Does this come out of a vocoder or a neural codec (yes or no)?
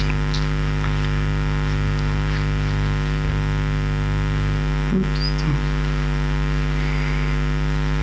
no